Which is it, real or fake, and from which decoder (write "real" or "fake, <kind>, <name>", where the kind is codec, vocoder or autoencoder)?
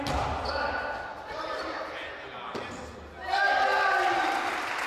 real